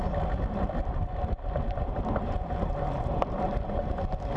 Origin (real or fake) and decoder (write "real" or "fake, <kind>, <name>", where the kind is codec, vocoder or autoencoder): real